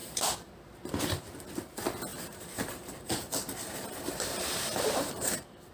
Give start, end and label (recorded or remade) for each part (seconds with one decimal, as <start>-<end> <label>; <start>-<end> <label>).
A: 0.0-0.5 remade; 0.5-2.1 recorded; 2.1-5.7 remade